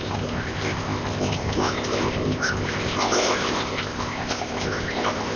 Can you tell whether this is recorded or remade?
remade